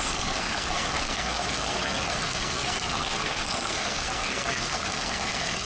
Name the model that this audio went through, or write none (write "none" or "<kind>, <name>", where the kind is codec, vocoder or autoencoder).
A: codec, SNAC